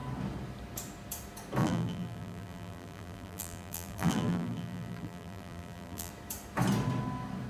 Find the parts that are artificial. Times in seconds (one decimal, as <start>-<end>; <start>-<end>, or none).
1.6-6.1